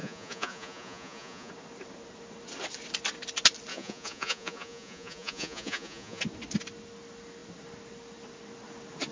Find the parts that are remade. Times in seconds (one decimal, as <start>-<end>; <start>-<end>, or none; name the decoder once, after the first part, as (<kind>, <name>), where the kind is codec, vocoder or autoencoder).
0.0-1.5 (vocoder, Vocos); 3.7-6.2